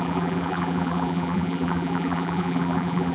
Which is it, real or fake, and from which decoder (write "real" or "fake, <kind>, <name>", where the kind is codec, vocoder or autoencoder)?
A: fake, vocoder, BigVGAN v2